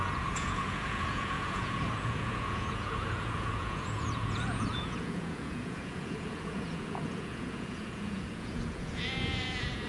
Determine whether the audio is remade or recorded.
remade